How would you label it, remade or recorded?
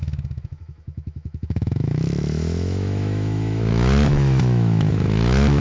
remade